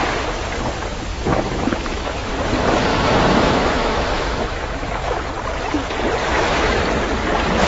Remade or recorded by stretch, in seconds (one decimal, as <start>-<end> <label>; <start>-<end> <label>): 0.0-1.1 recorded; 1.1-2.3 remade; 2.3-2.9 recorded; 2.9-5.3 remade; 5.3-6.2 recorded; 6.2-6.8 remade; 6.8-7.7 recorded